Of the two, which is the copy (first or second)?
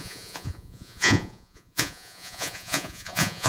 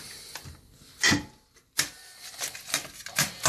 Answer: first